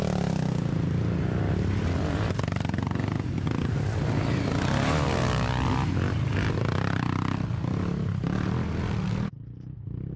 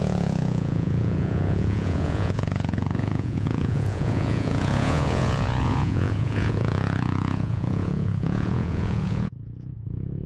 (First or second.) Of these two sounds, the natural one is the first